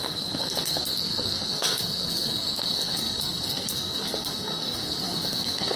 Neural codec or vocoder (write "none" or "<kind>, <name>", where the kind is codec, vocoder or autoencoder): codec, SNAC